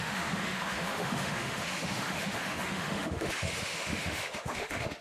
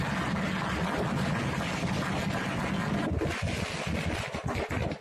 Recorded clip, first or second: second